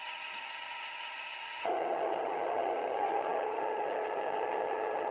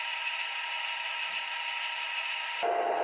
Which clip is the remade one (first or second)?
first